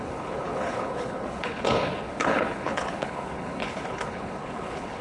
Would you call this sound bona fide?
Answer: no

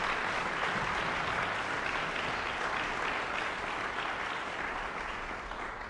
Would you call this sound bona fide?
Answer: yes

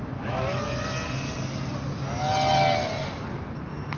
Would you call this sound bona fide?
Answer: yes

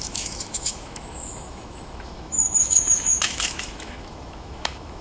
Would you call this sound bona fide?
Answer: no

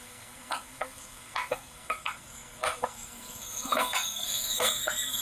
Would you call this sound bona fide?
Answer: no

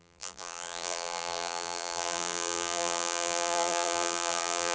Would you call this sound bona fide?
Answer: no